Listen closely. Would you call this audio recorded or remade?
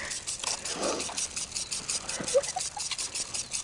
recorded